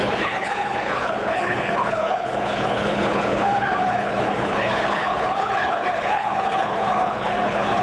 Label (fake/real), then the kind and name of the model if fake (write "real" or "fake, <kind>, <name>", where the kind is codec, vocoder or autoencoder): fake, codec, HILCodec